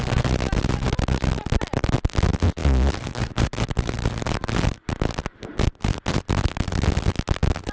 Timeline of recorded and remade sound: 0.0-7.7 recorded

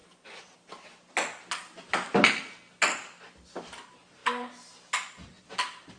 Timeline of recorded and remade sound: 0.0-6.0 recorded

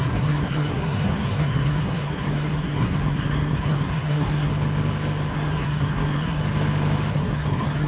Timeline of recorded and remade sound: 0.0-4.5 remade; 4.5-5.3 recorded; 5.3-6.4 remade; 6.4-7.1 recorded; 7.1-7.9 remade